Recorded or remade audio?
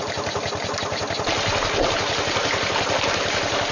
recorded